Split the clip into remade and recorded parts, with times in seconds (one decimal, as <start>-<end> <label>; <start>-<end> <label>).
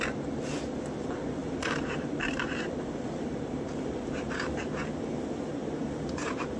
0.0-1.4 recorded; 1.4-5.0 remade; 5.0-5.6 recorded; 5.6-6.6 remade